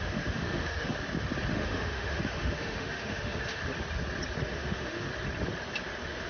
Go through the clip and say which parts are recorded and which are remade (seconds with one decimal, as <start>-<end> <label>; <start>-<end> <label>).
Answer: 0.0-0.9 remade; 0.9-1.5 recorded; 1.5-3.6 remade; 3.6-4.4 recorded; 4.4-5.1 remade; 5.1-6.3 recorded

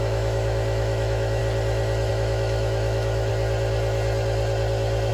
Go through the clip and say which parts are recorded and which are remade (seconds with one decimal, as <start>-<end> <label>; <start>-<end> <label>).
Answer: 0.0-1.4 remade; 1.4-2.1 recorded; 2.1-3.3 remade; 3.3-5.1 recorded

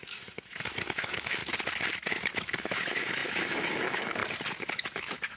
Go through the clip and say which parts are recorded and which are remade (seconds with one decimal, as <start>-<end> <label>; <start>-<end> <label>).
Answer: 0.0-1.4 remade; 1.4-2.1 recorded; 2.1-4.2 remade; 4.2-4.7 recorded; 4.7-5.4 remade

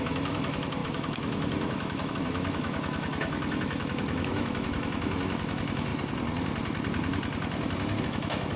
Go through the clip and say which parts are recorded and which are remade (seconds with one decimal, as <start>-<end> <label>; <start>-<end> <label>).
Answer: 0.0-5.9 remade; 5.9-8.0 recorded; 8.0-8.6 remade